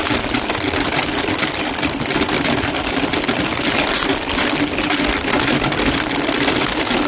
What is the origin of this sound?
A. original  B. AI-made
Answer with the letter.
A